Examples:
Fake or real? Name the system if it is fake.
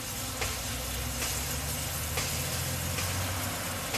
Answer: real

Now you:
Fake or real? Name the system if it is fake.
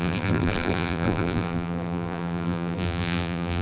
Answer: fake, vocoder, BigVGAN v2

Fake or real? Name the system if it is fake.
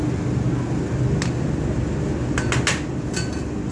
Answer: real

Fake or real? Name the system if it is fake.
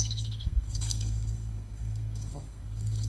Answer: fake, codec, SNAC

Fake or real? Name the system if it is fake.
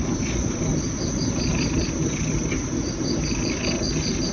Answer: real